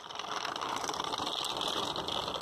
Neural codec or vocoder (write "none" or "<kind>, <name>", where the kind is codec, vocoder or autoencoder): none